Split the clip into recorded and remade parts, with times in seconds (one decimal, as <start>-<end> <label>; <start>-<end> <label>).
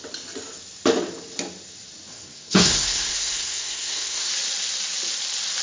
0.0-2.1 recorded; 2.1-4.3 remade; 4.3-5.6 recorded